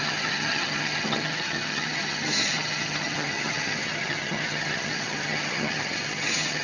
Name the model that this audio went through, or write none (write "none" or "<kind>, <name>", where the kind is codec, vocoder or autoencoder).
vocoder, HiFi-GAN